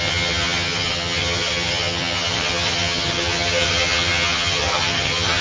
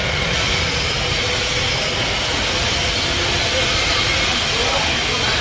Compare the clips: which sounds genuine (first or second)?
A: second